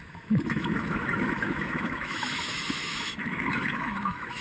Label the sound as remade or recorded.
remade